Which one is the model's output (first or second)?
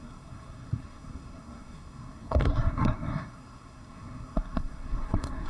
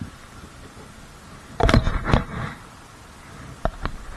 first